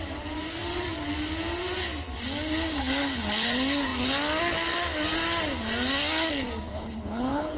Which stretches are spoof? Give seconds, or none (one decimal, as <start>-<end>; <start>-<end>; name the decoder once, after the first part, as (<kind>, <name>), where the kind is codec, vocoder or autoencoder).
6.7-7.6 (codec, HILCodec)